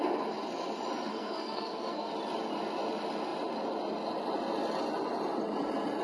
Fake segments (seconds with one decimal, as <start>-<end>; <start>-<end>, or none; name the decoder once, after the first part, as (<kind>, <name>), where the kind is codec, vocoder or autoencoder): 1.1-2.1 (codec, SNAC)